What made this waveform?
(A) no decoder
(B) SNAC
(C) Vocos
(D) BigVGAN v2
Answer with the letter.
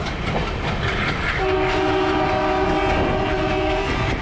A